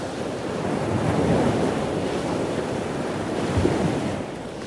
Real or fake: fake